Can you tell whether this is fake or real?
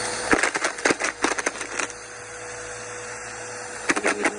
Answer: real